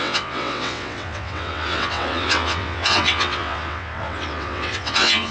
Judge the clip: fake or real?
fake